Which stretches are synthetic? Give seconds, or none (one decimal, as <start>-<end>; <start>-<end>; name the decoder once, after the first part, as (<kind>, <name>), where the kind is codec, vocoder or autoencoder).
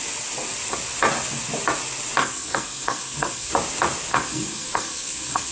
2.2-3.5 (codec, SNAC); 4.1-5.5